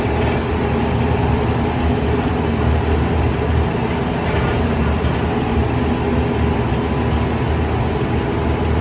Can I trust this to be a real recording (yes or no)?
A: yes